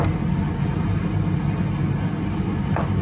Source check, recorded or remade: recorded